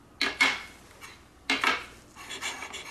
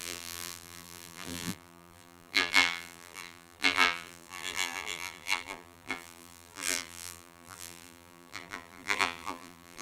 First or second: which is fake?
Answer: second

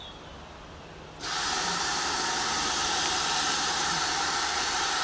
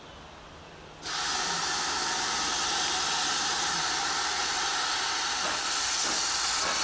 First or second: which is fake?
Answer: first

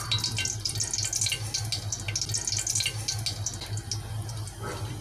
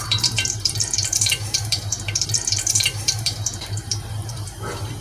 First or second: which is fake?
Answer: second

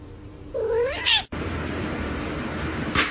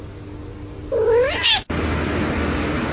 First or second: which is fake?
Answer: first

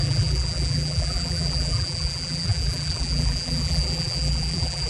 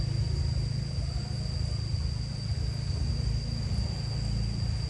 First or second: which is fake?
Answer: first